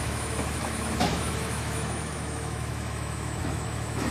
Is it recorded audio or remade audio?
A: remade